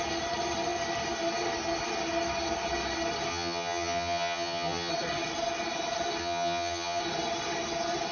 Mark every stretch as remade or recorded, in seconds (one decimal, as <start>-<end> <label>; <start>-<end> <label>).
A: 0.0-3.3 recorded; 3.3-4.9 remade; 4.9-6.2 recorded; 6.2-7.0 remade; 7.0-8.1 recorded